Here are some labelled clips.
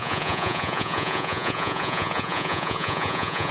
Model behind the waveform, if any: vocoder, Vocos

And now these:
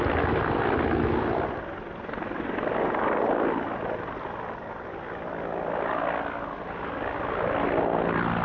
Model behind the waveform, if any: none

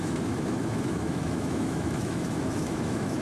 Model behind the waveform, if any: autoencoder, DAC-VAE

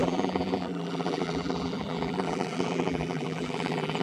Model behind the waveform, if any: vocoder, BigVGAN v2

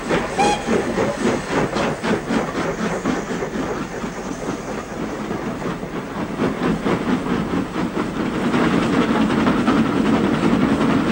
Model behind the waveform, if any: none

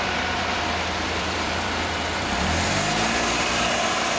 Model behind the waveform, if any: vocoder, BigVGAN v2